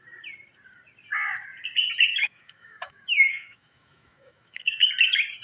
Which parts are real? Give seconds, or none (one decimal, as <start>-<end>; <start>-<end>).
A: 0.0-2.1; 4.9-5.4